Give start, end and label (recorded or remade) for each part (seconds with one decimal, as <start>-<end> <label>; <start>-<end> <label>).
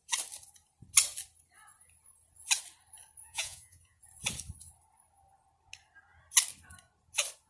0.0-3.2 recorded; 3.2-4.0 remade; 4.0-7.5 recorded